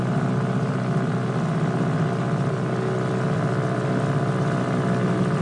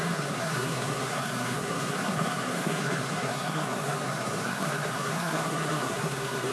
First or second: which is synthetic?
second